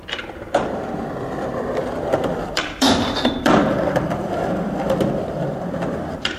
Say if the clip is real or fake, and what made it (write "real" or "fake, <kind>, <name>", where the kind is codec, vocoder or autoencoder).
fake, vocoder, BigVGAN v2